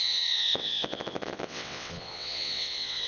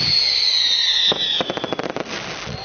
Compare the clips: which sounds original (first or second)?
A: second